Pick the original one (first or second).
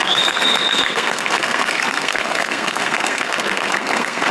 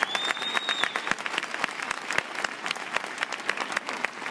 second